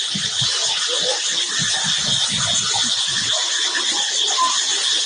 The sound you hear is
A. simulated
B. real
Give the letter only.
B